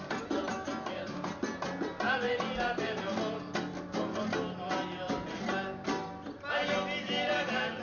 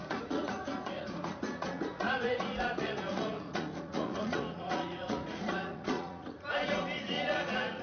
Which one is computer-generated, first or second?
second